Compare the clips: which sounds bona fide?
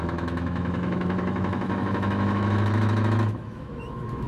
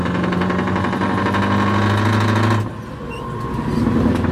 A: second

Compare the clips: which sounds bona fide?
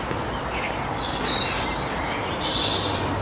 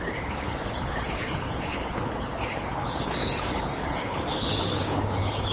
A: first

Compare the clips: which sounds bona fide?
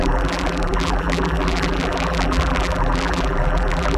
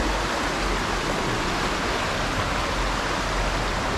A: second